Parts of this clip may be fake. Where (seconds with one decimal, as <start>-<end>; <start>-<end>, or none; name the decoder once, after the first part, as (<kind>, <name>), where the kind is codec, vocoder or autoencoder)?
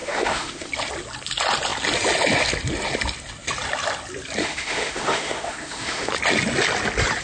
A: 0.0-0.7 (autoencoder, DAC-VAE); 4.4-6.1